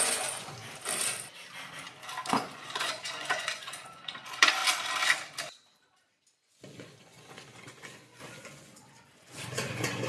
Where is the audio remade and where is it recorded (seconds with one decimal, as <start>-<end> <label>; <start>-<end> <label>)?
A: 0.0-0.6 remade; 0.6-2.3 recorded; 2.3-4.6 remade; 4.6-6.4 recorded; 6.4-10.1 remade